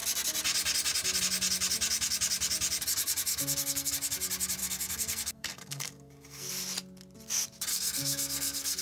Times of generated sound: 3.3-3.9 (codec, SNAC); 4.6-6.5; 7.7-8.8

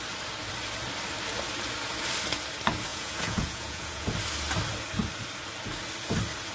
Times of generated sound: 2.9-4.1 (vocoder, Vocos)

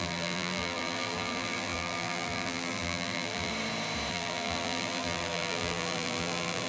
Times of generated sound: 0.0-3.5 (vocoder, BigVGAN v2); 4.1-6.7

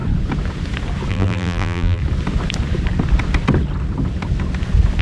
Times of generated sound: 1.1-2.0 (vocoder, BigVGAN v2)

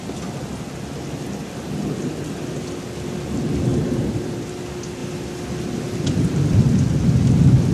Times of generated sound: 3.7-4.5 (vocoder, BigVGAN v2)